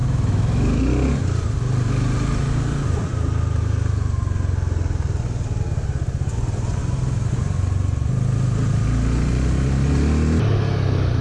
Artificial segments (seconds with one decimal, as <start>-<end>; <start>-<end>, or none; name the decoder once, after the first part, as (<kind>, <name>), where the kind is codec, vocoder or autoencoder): 0.0-0.8 (autoencoder, DAC-VAE)

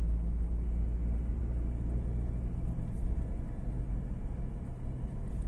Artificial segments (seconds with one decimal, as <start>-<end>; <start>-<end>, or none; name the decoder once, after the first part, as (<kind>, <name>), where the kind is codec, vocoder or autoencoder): none

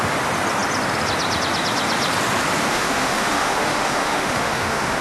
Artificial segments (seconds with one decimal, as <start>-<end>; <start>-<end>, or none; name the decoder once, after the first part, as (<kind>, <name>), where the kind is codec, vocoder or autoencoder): 2.7-5.0 (autoencoder, DAC-VAE)